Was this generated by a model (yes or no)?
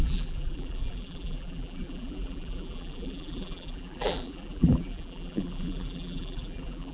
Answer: yes